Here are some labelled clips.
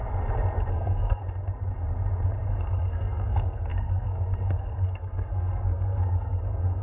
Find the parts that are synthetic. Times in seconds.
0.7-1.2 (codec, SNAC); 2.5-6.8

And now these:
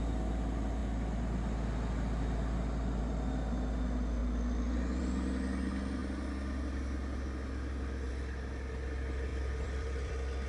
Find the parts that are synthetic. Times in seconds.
4.2-5.0 (vocoder, BigVGAN v2); 9.3-10.1

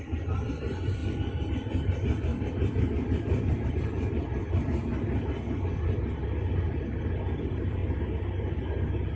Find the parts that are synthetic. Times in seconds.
0.0-1.0 (vocoder, BigVGAN v2); 1.5-2.3; 3.7-4.4; 5.5-7.8

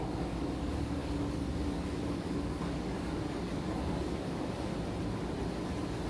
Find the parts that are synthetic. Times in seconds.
0.0-4.7 (codec, DAC)

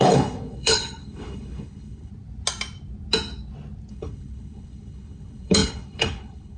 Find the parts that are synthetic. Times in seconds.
0.0-2.1 (codec, HILCodec); 3.9-6.6

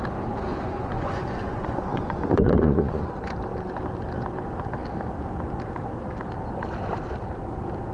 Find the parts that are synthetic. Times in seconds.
0.5-3.1 (vocoder, Vocos)

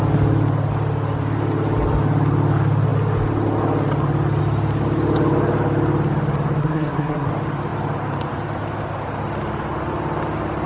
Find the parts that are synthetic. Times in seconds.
6.6-7.3 (codec, SNAC)

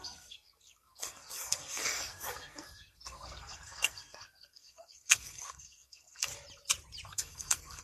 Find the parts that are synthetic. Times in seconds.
0.0-6.3 (codec, SNAC); 7.1-7.8